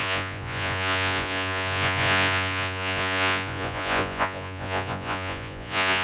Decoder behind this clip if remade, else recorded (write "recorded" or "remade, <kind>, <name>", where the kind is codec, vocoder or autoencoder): remade, vocoder, Vocos